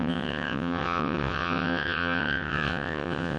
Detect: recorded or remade remade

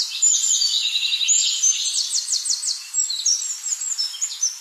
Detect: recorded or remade remade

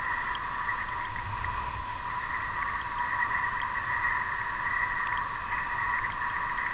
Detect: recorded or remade recorded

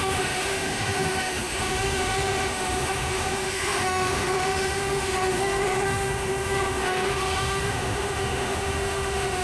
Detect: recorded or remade remade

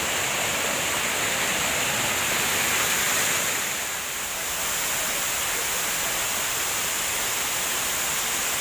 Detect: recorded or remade recorded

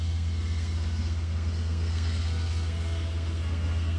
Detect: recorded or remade remade